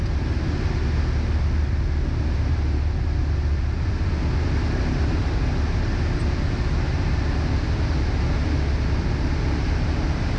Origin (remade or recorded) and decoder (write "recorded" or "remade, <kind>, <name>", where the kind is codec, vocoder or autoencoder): recorded